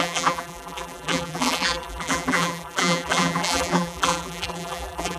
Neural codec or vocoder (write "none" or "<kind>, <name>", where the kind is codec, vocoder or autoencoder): vocoder, BigVGAN v2